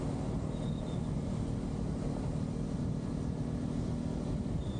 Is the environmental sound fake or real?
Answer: real